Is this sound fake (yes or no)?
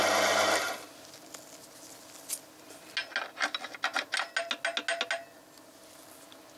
no